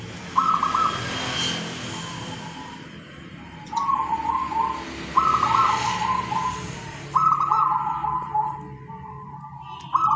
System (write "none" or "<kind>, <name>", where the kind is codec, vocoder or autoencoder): none